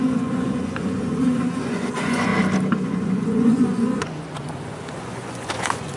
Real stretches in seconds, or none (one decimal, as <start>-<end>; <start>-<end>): 2.3-2.8